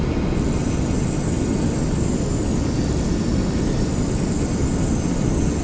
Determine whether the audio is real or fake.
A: real